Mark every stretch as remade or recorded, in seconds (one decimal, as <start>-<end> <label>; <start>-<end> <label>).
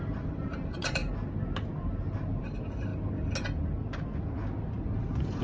0.0-1.0 remade; 1.0-2.0 recorded; 2.0-2.9 remade; 2.9-4.6 recorded; 4.6-5.4 remade